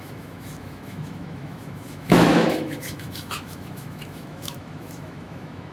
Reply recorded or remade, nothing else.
remade